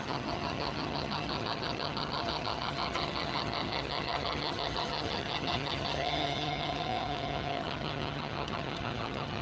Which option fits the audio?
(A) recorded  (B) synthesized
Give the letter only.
B